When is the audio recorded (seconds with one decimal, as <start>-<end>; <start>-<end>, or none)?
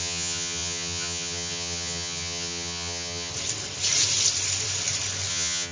3.3-5.3